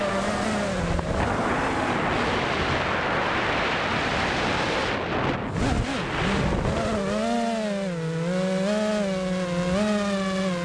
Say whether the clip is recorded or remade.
recorded